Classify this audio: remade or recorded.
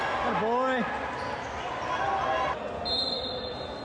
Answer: recorded